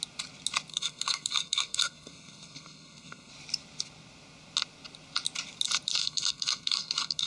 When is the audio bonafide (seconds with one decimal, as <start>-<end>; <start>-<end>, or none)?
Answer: 0.0-0.7; 3.3-6.0